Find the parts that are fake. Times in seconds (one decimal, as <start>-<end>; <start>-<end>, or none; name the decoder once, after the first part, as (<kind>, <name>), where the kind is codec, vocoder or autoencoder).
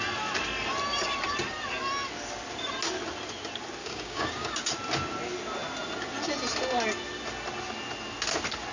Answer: 3.8-4.5 (codec, DAC)